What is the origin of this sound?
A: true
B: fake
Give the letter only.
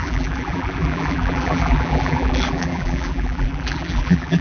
B